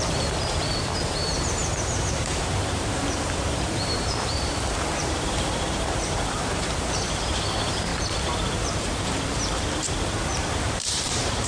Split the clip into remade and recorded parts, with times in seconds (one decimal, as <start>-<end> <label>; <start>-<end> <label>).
0.0-7.9 remade; 7.9-10.5 recorded; 10.5-11.5 remade